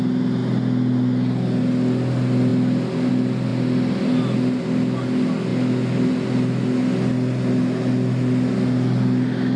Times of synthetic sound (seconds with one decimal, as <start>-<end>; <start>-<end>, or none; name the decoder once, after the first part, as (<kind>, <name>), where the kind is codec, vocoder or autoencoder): none